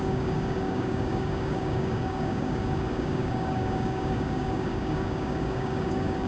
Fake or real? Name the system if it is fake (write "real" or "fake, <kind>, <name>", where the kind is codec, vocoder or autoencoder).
fake, codec, DAC